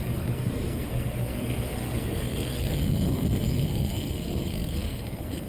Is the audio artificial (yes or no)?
yes